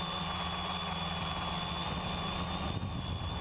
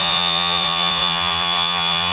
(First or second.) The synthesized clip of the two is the second